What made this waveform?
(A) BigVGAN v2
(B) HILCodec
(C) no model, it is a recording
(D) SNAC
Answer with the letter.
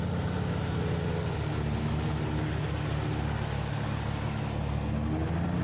C